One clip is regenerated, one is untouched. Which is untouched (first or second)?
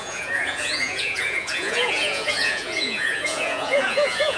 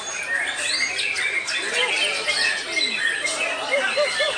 second